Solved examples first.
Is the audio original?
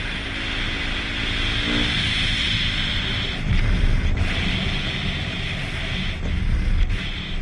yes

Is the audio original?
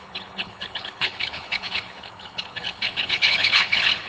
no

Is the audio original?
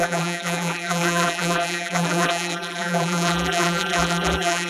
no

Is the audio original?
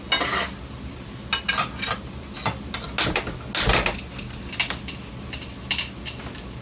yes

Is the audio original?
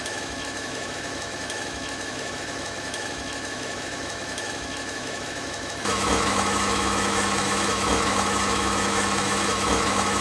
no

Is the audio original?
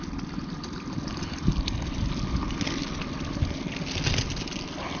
yes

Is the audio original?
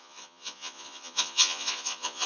no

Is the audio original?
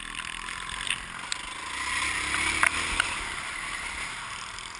yes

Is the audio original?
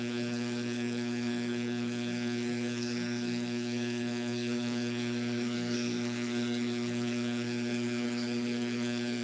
no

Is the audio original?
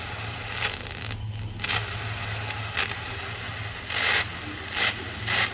yes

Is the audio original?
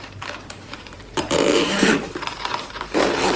no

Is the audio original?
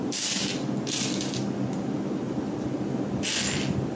yes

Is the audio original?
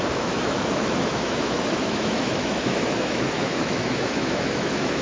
no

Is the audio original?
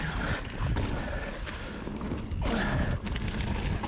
yes